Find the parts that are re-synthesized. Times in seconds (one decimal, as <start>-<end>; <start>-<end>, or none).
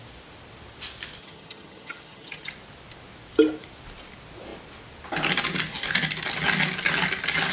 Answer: 1.2-2.5